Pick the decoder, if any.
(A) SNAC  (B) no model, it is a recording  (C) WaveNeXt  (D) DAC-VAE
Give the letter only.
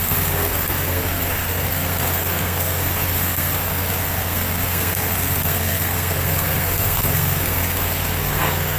A